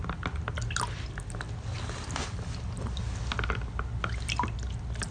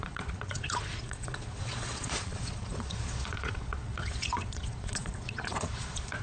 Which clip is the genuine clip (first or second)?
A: first